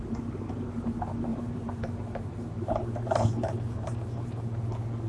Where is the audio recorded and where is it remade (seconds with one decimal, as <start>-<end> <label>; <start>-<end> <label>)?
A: 0.0-1.3 recorded; 1.3-4.4 remade; 4.4-5.1 recorded